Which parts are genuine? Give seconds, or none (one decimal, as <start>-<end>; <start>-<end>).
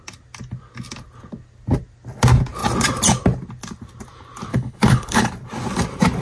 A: 0.0-4.5; 5.3-6.2